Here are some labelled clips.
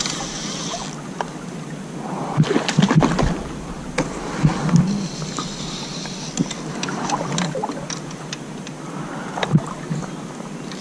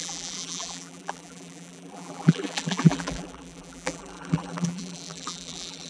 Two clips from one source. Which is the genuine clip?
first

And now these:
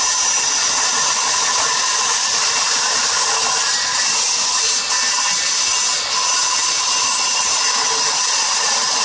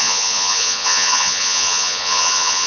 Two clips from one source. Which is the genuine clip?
first